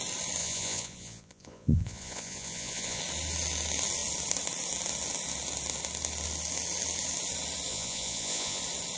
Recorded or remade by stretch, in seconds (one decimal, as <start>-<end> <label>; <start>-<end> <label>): 0.0-0.4 recorded; 0.4-3.0 remade; 3.0-7.7 recorded; 7.7-8.6 remade; 8.6-9.0 recorded